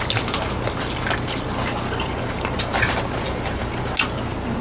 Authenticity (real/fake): real